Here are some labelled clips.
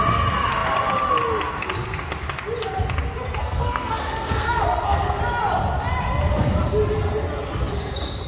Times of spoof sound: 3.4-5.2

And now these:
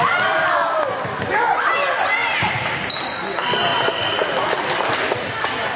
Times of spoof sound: 2.2-3.0